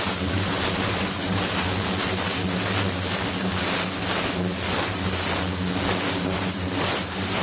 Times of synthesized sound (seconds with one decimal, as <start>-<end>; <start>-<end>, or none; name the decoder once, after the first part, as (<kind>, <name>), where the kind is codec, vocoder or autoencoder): 0.0-1.7 (vocoder, BigVGAN v2); 6.1-7.4